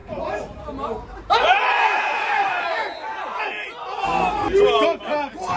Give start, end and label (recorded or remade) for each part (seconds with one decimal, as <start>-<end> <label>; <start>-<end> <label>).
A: 0.0-3.4 remade; 3.4-5.6 recorded